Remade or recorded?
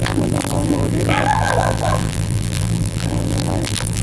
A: remade